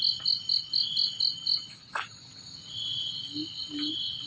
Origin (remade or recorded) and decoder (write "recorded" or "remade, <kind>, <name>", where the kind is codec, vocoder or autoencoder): recorded